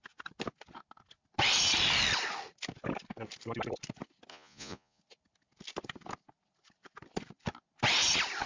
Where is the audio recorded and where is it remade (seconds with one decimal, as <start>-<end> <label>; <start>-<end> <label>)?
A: 0.0-4.3 recorded; 4.3-5.0 remade; 5.0-8.5 recorded

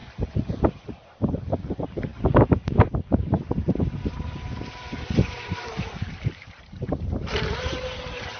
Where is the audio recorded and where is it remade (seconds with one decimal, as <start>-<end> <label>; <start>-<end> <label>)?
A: 0.0-0.5 recorded; 0.5-8.4 remade

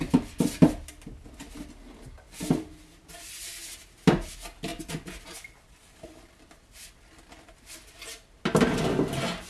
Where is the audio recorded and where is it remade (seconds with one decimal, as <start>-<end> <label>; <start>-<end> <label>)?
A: 0.0-4.7 recorded; 4.7-6.9 remade; 6.9-9.5 recorded